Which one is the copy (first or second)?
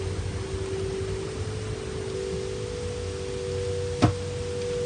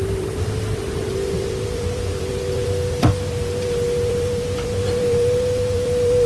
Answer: second